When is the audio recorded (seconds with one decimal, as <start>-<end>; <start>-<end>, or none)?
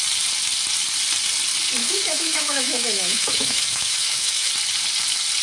0.0-1.8; 4.5-5.4